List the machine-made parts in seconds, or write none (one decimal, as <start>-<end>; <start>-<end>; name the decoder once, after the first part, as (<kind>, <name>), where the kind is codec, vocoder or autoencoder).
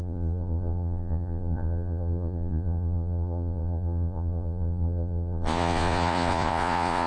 0.0-7.1 (vocoder, Vocos)